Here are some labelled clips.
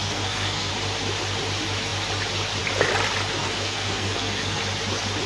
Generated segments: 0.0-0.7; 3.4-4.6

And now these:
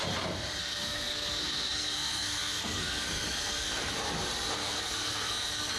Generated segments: 0.6-3.9; 4.6-5.8